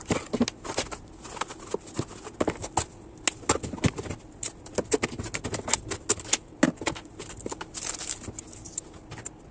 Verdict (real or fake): real